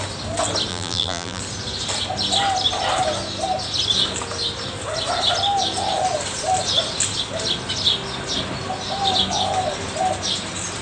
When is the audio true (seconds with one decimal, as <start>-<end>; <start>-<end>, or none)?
0.0-0.7; 1.4-10.8